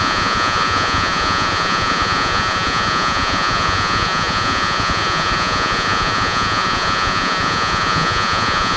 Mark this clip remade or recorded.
remade